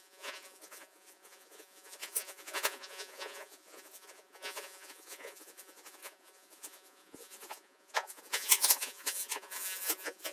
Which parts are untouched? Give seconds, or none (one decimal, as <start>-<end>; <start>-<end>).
none